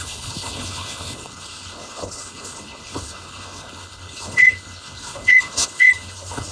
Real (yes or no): no